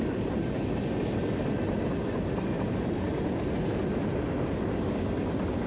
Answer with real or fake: real